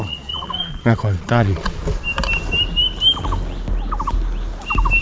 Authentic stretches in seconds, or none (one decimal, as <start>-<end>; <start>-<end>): 1.8-5.0